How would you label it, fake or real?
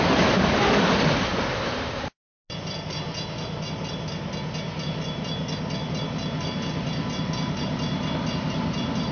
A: real